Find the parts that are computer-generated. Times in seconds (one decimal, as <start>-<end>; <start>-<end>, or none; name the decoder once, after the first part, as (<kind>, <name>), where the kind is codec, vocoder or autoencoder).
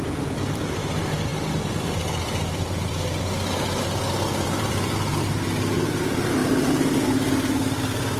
0.0-6.4 (vocoder, BigVGAN v2)